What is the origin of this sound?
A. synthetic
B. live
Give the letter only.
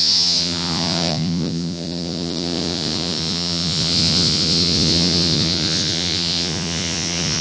A